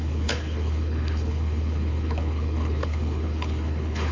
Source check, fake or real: fake